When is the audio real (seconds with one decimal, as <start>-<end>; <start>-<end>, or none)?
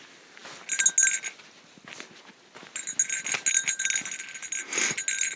0.0-5.4